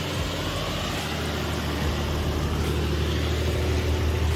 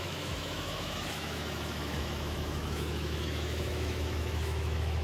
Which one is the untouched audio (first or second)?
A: first